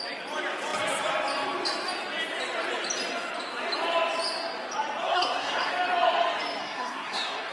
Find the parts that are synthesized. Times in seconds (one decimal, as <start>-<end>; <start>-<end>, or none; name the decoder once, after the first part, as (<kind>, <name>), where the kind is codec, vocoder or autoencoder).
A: 5.0-5.7 (codec, SNAC); 6.6-7.5